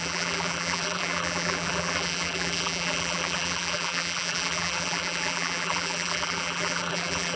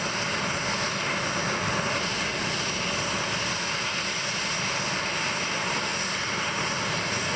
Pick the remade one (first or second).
first